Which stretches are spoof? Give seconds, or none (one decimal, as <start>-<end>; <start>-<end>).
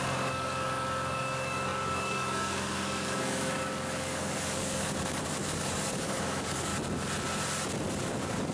0.0-6.7; 8.0-8.5